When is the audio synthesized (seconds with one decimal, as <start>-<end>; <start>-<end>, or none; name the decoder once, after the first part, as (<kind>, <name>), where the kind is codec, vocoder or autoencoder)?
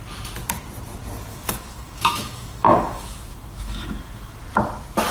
1.3-4.4 (autoencoder, DAC-VAE)